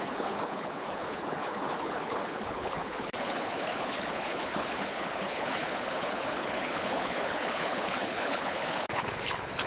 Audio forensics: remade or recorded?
remade